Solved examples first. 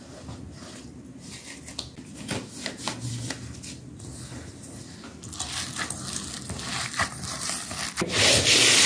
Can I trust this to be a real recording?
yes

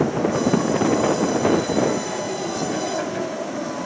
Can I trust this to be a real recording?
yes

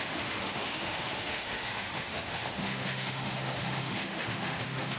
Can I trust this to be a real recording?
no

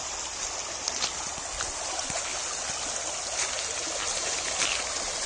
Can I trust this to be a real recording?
yes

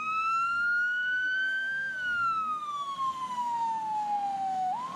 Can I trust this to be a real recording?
no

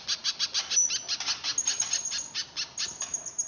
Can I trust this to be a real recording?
yes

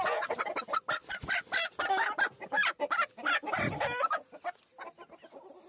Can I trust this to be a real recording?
yes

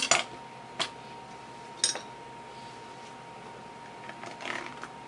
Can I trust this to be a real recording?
yes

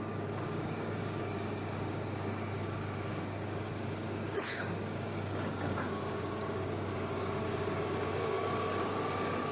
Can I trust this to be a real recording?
no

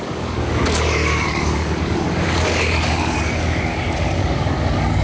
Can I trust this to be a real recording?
no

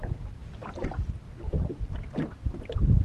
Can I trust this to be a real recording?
yes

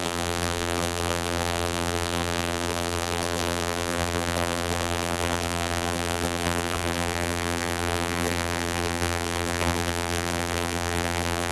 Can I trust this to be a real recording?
no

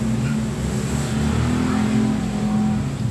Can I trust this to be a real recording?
yes